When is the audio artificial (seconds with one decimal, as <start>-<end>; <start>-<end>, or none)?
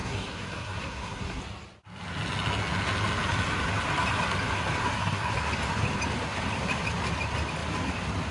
0.0-1.4; 4.8-5.3